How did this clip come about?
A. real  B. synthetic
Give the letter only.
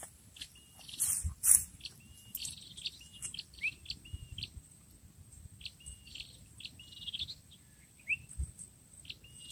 A